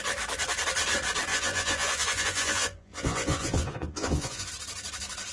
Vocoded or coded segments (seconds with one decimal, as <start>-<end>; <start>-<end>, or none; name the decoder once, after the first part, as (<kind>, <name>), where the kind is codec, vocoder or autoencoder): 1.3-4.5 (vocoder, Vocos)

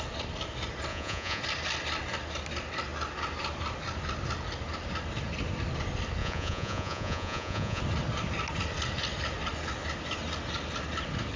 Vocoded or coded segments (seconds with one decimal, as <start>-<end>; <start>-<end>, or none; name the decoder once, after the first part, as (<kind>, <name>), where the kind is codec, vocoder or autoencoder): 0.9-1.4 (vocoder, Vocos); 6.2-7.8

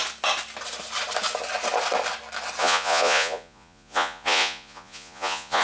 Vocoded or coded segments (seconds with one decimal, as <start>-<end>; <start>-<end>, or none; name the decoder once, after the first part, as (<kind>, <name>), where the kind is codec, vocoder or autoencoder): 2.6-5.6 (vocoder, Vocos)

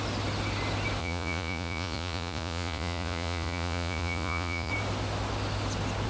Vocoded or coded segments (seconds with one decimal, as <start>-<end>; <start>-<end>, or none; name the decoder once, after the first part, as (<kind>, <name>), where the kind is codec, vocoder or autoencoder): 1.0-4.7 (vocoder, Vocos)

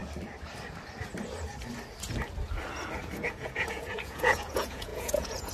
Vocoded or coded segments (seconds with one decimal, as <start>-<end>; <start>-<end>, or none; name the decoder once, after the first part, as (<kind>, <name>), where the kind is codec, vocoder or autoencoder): 3.3-5.5 (vocoder, Vocos)

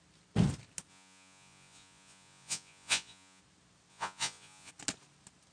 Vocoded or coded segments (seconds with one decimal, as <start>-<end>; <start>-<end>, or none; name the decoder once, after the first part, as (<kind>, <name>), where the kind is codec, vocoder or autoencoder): 0.9-3.4 (vocoder, Vocos); 3.9-4.7

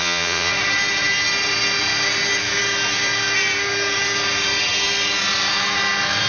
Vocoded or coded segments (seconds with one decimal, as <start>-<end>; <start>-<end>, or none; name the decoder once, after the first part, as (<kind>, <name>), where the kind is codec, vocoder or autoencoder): 0.0-0.5 (vocoder, Vocos)

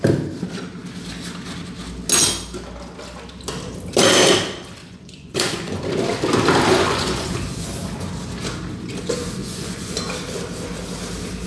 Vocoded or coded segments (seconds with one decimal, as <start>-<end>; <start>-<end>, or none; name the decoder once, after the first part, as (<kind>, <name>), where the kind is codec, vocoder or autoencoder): 4.8-5.8 (vocoder, Vocos); 6.7-7.3; 9.4-10.0